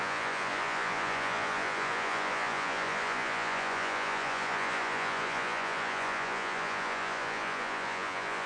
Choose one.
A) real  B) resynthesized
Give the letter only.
B